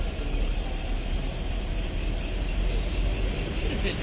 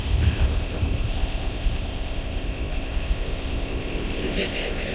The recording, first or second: first